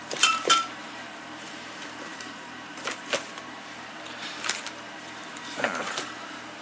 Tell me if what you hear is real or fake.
fake